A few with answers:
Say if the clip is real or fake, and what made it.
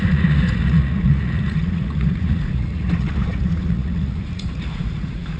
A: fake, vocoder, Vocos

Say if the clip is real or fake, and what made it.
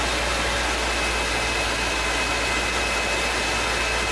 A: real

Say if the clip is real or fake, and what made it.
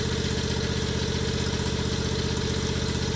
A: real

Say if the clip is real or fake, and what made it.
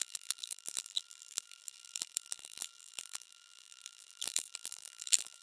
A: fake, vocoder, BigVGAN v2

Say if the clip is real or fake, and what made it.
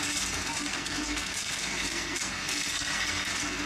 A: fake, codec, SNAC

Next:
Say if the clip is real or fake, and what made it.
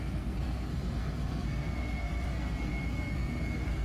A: fake, codec, SNAC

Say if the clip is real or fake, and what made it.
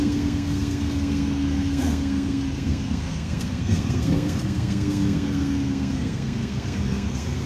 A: fake, codec, SNAC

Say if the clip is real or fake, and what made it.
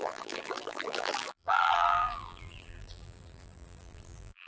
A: fake, vocoder, BigVGAN v2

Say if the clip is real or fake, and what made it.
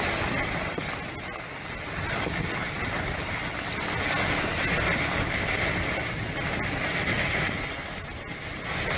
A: real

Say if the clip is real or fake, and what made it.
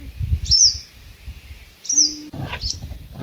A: real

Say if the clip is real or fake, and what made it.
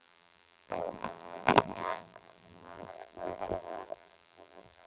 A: fake, vocoder, BigVGAN v2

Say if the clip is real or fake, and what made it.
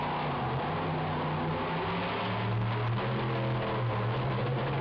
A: real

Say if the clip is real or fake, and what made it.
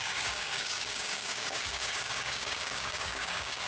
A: fake, codec, DAC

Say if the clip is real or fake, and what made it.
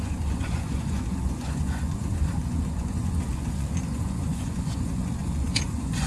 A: fake, vocoder, Vocos